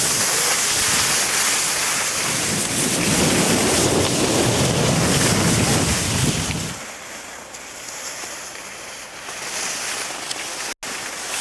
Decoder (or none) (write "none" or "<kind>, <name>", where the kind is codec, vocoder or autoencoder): none